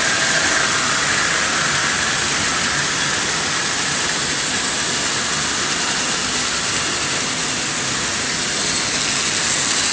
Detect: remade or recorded recorded